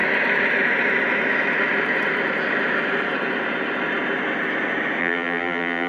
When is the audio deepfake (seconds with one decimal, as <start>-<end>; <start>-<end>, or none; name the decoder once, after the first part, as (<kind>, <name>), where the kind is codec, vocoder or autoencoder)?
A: 5.0-5.9 (vocoder, BigVGAN v2)